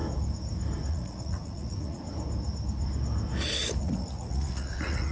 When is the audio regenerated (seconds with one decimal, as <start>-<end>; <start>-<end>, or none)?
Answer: 0.9-2.0; 3.8-5.1